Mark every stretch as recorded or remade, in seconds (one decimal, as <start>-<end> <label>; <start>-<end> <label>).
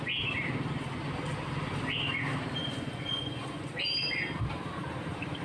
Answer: 0.0-2.6 recorded; 2.6-3.7 remade; 3.7-5.4 recorded